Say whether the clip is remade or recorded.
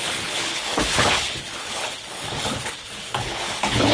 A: remade